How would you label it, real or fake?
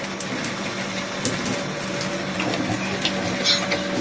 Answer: real